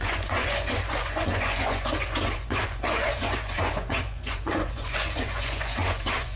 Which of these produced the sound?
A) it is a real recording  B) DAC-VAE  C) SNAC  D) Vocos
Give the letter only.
D